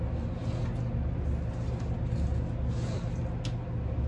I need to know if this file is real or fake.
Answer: real